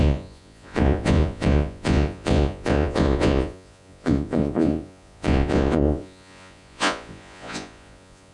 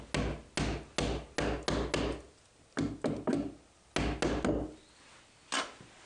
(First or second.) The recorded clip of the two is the second